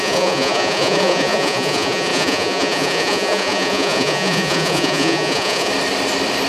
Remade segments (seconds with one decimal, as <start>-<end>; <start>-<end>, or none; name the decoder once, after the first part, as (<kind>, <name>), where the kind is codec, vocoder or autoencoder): 0.0-5.7 (vocoder, Vocos)